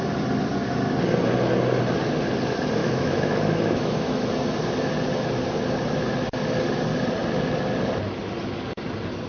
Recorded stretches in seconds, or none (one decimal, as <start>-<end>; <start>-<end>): 0.0-2.8; 4.3-9.3